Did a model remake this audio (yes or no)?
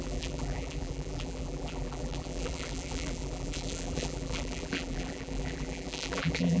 yes